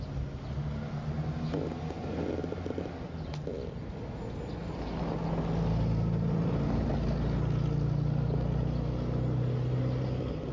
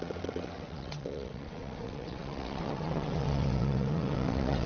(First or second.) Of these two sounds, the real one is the first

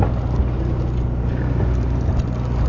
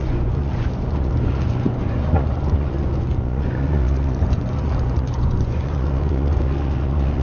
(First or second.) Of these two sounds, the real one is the first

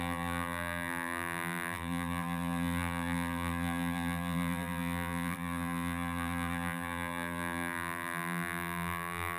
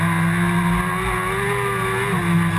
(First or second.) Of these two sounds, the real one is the second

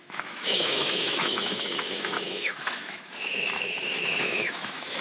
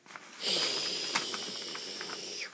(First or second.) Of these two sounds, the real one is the second